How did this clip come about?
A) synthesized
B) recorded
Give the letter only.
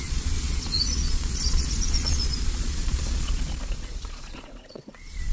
A